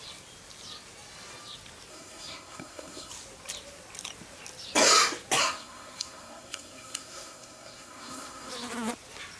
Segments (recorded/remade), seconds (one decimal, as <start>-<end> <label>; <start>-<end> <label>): 0.0-1.9 recorded; 1.9-3.1 remade; 3.1-5.4 recorded; 5.4-8.5 remade; 8.5-9.4 recorded